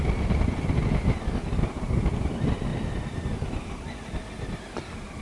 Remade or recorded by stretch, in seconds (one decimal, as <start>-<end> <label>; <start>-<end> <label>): 0.0-5.2 recorded

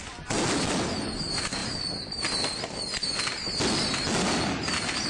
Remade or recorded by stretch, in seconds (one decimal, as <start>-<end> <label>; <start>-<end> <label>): 0.0-5.1 recorded

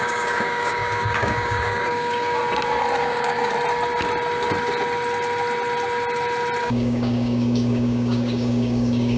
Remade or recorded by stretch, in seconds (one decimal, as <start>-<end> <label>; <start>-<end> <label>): 0.0-2.4 remade; 2.4-3.0 recorded; 3.0-3.5 remade; 3.5-6.6 recorded; 6.6-9.2 remade

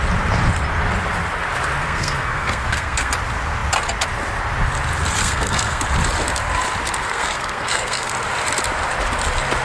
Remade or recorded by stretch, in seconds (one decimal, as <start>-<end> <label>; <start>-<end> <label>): 0.0-1.8 recorded; 1.8-3.1 remade; 3.1-5.2 recorded; 5.2-5.8 remade; 5.8-7.0 recorded; 7.0-8.1 remade; 8.1-9.6 recorded